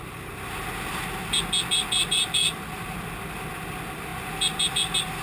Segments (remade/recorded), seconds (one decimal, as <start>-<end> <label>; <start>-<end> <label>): 0.0-5.2 recorded